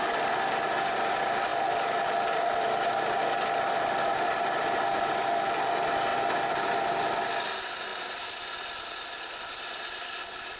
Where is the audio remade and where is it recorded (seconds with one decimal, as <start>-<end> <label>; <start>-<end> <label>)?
0.0-10.6 recorded